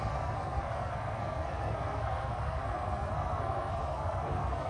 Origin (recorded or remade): remade